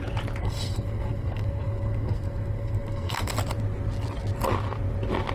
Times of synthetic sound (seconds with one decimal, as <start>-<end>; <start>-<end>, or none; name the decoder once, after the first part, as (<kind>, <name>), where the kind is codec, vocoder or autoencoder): 0.4-3.3 (codec, SNAC)